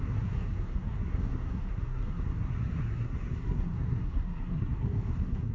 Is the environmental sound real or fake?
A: fake